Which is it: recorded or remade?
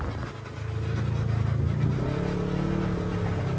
recorded